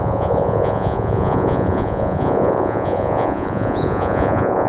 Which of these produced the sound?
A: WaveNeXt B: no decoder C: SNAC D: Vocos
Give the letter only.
D